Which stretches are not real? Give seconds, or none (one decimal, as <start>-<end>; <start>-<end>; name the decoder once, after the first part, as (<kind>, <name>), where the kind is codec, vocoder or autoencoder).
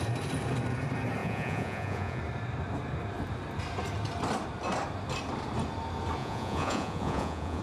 1.2-2.2 (vocoder, Vocos); 6.2-7.6